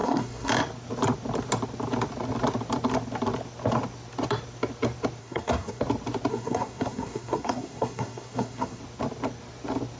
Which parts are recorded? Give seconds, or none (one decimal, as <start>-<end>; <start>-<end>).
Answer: 0.5-5.2; 5.8-6.3; 8.8-10.0